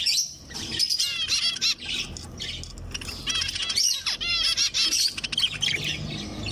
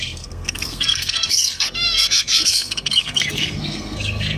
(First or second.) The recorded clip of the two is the first